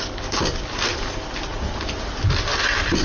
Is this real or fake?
real